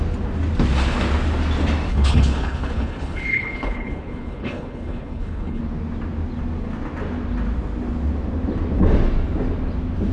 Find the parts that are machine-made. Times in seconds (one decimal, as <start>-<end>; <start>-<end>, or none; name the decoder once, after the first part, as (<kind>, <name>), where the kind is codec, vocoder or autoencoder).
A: 1.9-5.6 (codec, HILCodec)